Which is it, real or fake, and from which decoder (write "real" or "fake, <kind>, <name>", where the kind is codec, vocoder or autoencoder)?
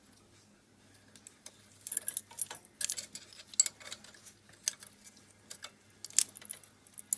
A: real